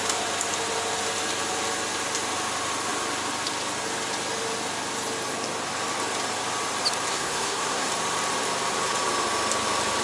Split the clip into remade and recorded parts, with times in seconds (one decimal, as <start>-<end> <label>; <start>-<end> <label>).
0.0-7.1 recorded; 7.1-7.9 remade; 7.9-10.0 recorded